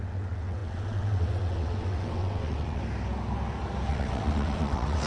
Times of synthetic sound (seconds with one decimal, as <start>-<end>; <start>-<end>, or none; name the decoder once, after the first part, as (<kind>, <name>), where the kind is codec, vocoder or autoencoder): 0.0-2.8 (vocoder, WaveNeXt); 3.9-5.1